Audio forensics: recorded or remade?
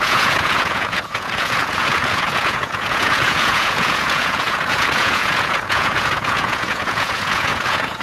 remade